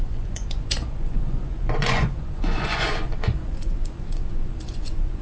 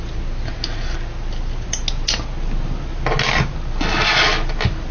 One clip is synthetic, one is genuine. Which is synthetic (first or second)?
first